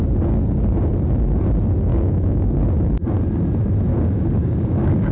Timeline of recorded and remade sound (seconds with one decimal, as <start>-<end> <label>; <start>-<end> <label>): 0.0-1.9 recorded; 1.9-2.6 remade; 2.6-3.9 recorded; 3.9-5.1 remade